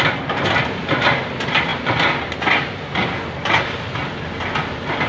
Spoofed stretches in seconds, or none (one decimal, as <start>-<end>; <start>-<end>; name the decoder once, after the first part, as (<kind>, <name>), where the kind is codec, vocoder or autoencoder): none